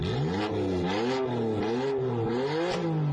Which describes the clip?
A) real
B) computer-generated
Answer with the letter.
A